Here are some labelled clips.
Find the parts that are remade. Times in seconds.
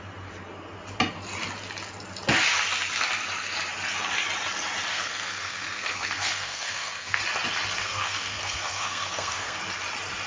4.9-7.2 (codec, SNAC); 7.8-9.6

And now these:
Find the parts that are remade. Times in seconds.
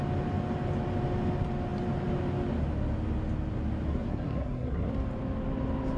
3.9-4.9 (codec, SNAC)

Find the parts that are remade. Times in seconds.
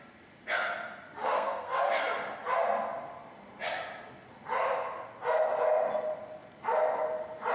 1.2-1.9 (codec, SNAC)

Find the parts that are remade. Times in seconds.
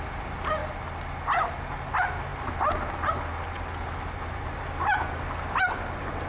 none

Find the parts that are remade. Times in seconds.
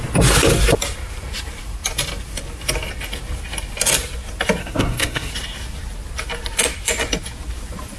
4.6-5.3 (codec, SNAC)